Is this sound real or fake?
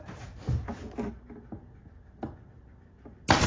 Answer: real